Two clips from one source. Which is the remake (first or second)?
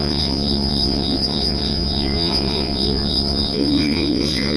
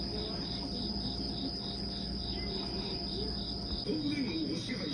first